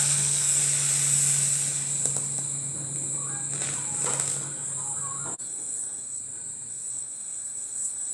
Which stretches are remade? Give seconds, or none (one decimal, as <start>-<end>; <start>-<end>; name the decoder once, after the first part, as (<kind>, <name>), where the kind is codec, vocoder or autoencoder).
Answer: 0.0-0.6 (codec, SNAC); 5.4-6.2; 6.7-8.1